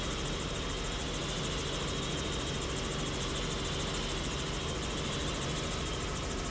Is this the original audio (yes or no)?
yes